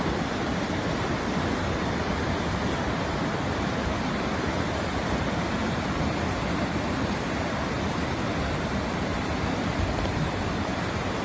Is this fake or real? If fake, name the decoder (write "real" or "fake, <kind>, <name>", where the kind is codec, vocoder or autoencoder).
fake, vocoder, BigVGAN v2